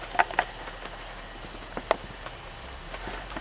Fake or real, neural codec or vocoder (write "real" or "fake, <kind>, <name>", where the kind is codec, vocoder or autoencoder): real